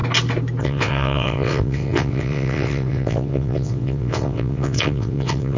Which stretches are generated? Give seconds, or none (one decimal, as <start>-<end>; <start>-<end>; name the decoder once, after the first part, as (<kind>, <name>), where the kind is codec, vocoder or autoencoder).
0.6-5.6 (vocoder, WaveNeXt)